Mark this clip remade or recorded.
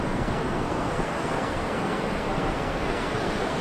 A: remade